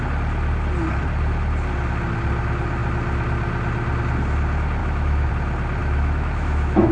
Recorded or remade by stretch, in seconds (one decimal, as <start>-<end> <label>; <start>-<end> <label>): 0.0-4.8 recorded; 4.8-5.3 remade; 5.3-5.8 recorded; 5.8-6.9 remade